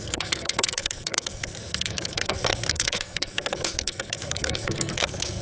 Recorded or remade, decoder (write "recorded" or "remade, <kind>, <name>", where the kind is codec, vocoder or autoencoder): remade, codec, SNAC